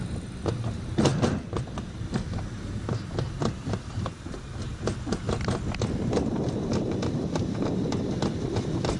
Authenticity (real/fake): real